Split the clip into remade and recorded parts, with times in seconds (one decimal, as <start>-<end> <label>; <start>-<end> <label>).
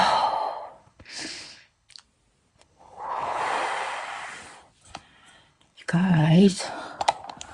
0.0-0.8 recorded; 0.8-1.9 remade; 1.9-2.5 recorded; 2.5-3.4 remade; 3.4-5.5 recorded; 5.5-6.6 remade; 6.6-7.5 recorded